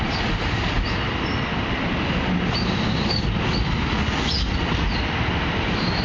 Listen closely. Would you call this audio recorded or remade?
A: recorded